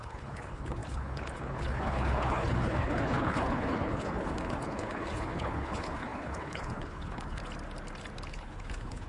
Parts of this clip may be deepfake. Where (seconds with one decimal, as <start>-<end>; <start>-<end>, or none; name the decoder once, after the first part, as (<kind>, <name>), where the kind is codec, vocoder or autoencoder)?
0.0-7.4 (codec, HILCodec); 8.3-9.1

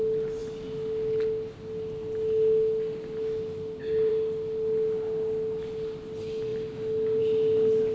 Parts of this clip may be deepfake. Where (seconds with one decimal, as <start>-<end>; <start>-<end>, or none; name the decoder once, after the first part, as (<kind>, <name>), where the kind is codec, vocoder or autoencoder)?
none

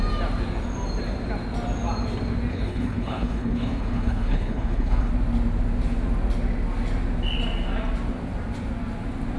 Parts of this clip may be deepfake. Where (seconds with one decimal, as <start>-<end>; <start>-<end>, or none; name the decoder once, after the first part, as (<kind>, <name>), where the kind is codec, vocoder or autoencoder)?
2.5-5.1 (codec, HILCodec)

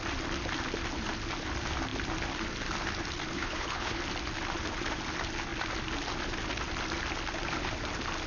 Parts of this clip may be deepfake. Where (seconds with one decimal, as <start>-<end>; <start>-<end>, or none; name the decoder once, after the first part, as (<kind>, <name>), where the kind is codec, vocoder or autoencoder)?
3.3-4.0 (codec, HILCodec)

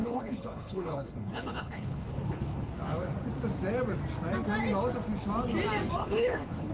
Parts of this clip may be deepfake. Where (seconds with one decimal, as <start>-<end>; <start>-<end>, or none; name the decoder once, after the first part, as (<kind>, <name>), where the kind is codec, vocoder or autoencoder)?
0.0-2.7 (codec, HILCodec); 6.0-6.7